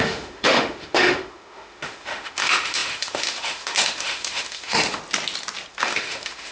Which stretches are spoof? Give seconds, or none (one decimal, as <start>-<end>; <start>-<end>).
0.0-5.0; 5.7-6.5